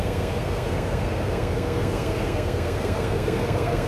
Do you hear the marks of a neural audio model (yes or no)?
yes